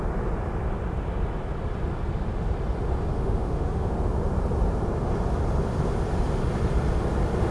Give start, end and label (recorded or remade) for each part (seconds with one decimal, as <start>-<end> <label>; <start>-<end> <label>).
0.0-3.1 recorded; 3.1-3.9 remade; 3.9-7.5 recorded